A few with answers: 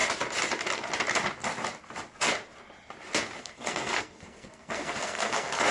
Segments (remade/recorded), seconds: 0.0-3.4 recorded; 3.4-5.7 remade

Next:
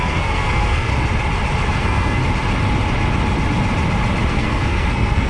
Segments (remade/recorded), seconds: 0.0-0.9 remade; 0.9-1.8 recorded; 1.8-2.2 remade; 2.2-4.3 recorded; 4.3-5.3 remade

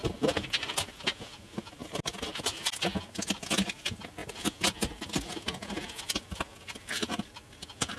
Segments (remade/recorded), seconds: 0.0-8.0 recorded

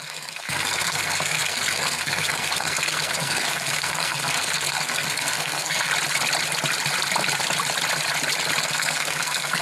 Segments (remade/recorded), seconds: 0.0-5.9 remade; 5.9-8.6 recorded; 8.6-9.6 remade

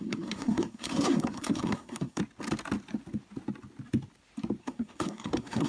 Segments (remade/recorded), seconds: 0.0-2.2 remade; 2.2-4.6 recorded; 4.6-5.7 remade

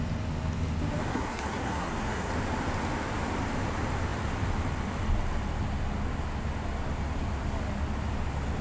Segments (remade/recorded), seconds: 0.0-1.1 recorded; 1.1-2.3 remade; 2.3-8.6 recorded

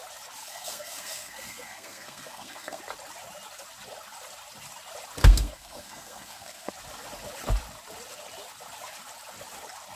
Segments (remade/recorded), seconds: 0.0-0.4 recorded; 0.4-2.8 remade; 2.8-5.2 recorded; 5.2-6.7 remade; 6.7-10.0 recorded

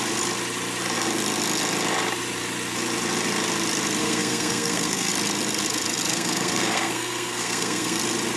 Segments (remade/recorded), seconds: 0.0-4.0 recorded; 4.0-5.1 remade; 5.1-6.1 recorded; 6.1-8.0 remade; 8.0-8.4 recorded